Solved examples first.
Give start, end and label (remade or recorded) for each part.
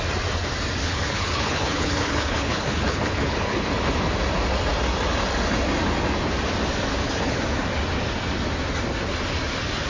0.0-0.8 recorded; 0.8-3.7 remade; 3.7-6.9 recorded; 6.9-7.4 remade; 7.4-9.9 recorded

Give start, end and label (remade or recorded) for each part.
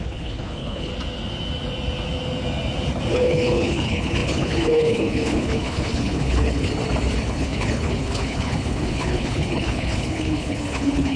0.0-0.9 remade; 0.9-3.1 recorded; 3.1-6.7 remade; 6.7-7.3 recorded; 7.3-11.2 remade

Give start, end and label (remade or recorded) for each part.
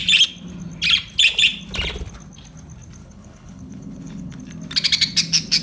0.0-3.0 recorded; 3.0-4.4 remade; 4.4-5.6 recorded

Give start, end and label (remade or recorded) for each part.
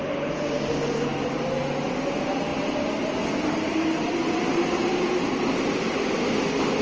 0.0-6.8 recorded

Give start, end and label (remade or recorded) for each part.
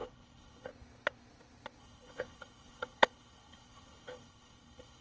0.0-0.7 remade; 0.7-1.8 recorded; 1.8-5.0 remade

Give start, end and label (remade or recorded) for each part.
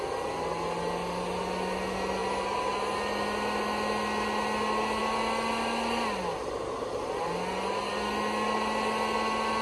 0.0-9.6 recorded